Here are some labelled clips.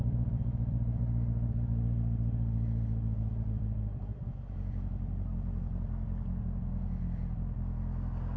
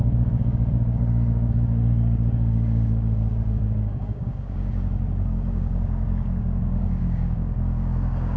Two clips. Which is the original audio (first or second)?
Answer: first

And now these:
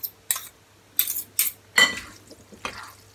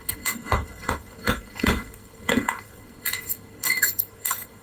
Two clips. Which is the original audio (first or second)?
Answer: first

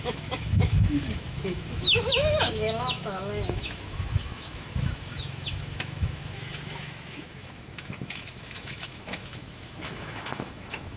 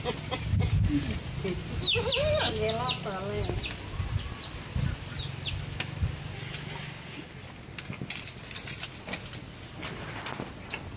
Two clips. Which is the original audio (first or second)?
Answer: second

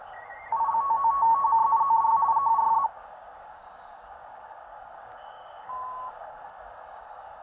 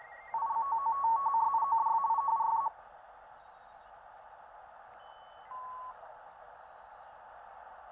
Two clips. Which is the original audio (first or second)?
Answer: second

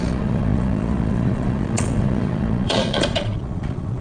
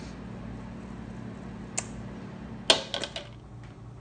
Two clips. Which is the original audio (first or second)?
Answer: second